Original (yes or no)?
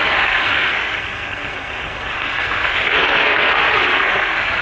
no